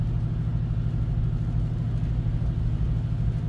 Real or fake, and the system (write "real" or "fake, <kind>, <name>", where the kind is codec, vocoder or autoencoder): real